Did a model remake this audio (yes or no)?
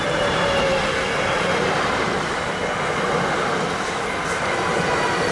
no